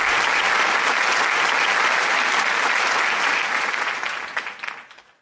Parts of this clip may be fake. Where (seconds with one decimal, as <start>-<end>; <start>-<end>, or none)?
none